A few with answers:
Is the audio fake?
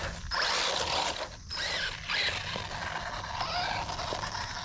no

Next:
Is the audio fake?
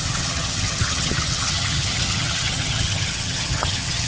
yes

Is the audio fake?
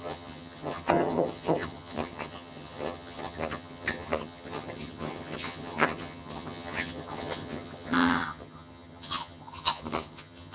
yes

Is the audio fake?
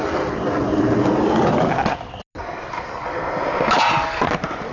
no